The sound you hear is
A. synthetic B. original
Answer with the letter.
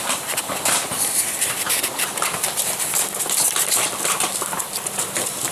A